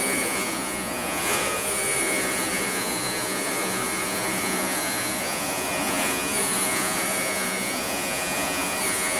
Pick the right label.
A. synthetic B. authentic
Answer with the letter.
A